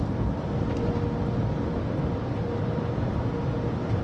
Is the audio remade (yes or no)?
no